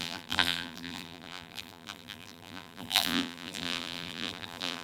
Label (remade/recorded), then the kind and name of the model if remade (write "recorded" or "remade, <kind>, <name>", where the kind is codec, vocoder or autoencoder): remade, vocoder, BigVGAN v2